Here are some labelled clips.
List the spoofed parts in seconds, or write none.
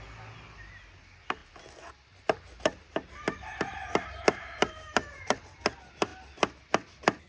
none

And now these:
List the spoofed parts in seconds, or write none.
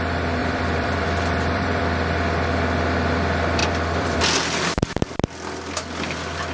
0.4-1.8 (vocoder, BigVGAN v2); 3.6-4.2